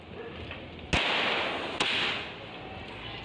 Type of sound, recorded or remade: recorded